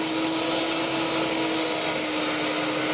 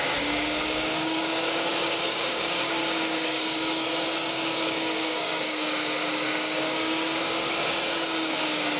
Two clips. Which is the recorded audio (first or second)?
first